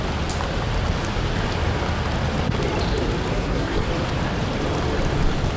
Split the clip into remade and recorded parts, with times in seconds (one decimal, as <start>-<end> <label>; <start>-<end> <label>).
0.0-3.3 recorded; 3.3-3.9 remade; 3.9-5.6 recorded